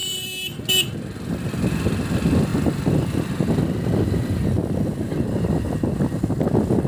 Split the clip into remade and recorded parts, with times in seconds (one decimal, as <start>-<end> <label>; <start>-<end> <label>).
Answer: 0.0-2.5 recorded; 2.5-3.3 remade; 3.3-6.9 recorded